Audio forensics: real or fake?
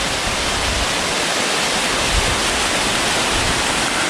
real